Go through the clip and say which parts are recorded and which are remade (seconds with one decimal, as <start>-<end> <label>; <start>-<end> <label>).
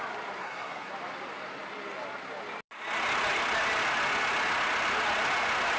0.0-0.4 recorded; 0.4-0.9 remade; 0.9-5.8 recorded